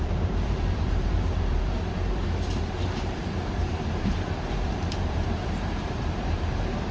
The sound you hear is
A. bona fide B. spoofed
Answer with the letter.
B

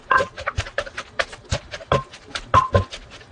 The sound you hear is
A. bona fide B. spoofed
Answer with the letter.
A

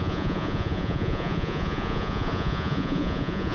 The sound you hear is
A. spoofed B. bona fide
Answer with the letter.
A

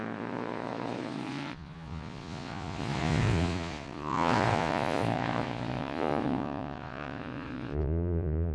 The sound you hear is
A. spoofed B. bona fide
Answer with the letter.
A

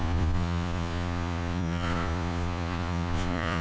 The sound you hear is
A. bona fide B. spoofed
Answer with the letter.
B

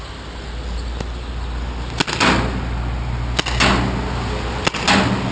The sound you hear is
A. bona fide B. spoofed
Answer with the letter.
A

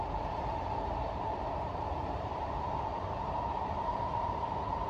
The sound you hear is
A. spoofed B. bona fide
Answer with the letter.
A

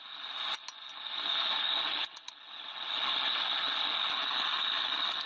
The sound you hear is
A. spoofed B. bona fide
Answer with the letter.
B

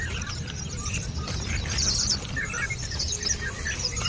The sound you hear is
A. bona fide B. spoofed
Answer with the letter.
A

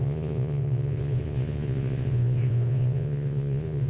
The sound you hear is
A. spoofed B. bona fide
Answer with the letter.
A